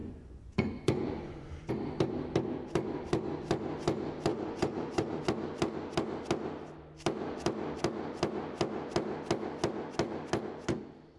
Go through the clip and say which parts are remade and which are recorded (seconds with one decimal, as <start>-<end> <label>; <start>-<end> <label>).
0.0-1.7 remade; 1.7-4.3 recorded; 4.3-5.2 remade; 5.2-11.2 recorded